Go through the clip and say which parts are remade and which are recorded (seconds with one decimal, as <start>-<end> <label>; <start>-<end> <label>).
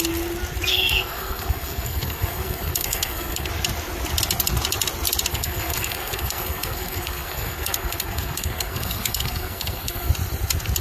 0.0-0.7 recorded; 0.7-3.5 remade; 3.5-5.3 recorded; 5.3-10.1 remade; 10.1-10.8 recorded